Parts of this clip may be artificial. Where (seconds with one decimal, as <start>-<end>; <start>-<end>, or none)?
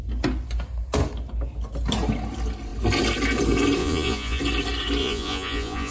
3.8-4.4; 5.0-5.9